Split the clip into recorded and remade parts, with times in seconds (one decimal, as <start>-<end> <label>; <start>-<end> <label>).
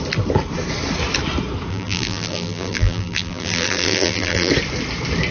0.0-1.7 recorded; 1.7-4.5 remade; 4.5-5.3 recorded